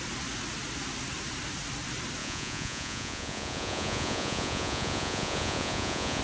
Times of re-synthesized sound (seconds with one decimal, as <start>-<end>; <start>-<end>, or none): 2.2-6.2